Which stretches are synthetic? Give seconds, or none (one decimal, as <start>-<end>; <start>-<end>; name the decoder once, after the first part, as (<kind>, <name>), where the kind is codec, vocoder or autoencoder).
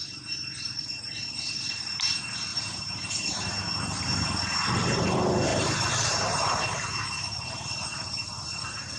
2.5-3.5 (vocoder, BigVGAN v2); 5.5-6.5